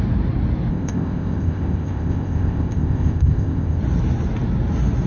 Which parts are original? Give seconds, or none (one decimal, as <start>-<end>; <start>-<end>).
0.0-0.7; 3.8-5.1